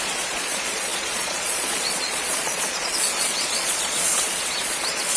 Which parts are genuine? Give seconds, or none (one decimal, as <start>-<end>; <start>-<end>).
none